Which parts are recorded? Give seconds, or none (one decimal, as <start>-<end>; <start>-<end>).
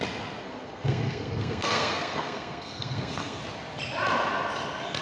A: 0.0-0.4; 3.4-5.0